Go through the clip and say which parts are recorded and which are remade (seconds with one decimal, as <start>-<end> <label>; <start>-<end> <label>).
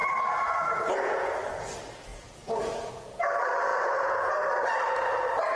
0.0-1.3 remade; 1.3-2.1 recorded; 2.1-3.3 remade; 3.3-3.7 recorded; 3.7-4.3 remade; 4.3-5.6 recorded